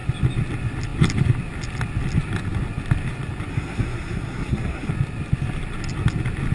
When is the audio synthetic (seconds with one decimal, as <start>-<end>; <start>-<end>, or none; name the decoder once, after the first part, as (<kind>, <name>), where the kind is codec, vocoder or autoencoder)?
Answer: 3.5-4.9 (codec, SNAC)